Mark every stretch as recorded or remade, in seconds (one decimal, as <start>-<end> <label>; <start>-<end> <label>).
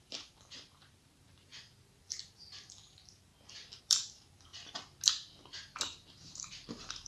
0.0-1.5 remade; 1.5-2.7 recorded; 2.7-3.3 remade; 3.3-3.8 recorded; 3.8-4.5 remade; 4.5-6.5 recorded; 6.5-7.1 remade